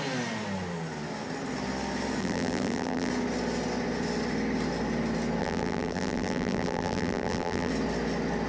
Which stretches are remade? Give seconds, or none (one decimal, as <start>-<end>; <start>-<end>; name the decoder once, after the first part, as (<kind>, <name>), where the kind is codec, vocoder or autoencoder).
2.2-3.1 (vocoder, BigVGAN v2); 5.4-7.7